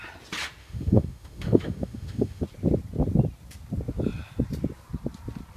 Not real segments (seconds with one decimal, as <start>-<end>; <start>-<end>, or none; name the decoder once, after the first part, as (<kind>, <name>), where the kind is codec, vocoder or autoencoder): 0.6-2.4 (autoencoder, DAC-VAE)